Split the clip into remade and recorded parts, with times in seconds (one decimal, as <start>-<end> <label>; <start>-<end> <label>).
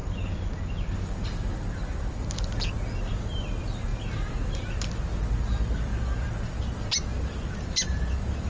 0.0-8.5 recorded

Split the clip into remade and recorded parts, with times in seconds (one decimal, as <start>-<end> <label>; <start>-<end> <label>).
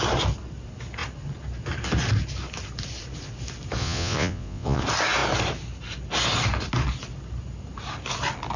0.0-3.8 recorded; 3.8-4.8 remade; 4.8-8.6 recorded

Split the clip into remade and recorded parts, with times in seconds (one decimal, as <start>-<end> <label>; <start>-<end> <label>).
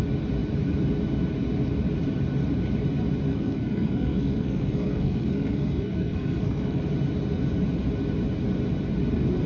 0.0-3.3 recorded; 3.3-6.8 remade; 6.8-9.5 recorded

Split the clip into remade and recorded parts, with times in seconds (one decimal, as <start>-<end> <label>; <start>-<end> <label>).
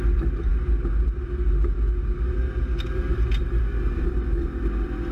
0.0-5.1 recorded